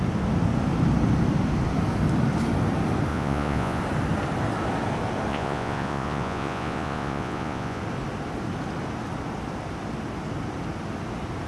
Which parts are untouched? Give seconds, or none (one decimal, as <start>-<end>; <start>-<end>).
0.0-3.1; 3.8-5.3; 7.8-11.5